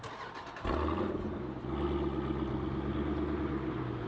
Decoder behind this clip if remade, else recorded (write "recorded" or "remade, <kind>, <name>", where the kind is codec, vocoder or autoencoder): recorded